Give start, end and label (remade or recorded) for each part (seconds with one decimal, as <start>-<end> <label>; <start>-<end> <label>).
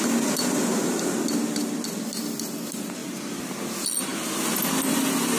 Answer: 0.0-5.4 recorded